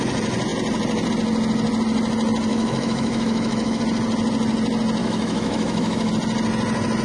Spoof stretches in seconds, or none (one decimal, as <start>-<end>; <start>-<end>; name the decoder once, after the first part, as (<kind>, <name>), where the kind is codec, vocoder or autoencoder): 2.5-3.8 (autoencoder, DAC-VAE); 5.0-6.1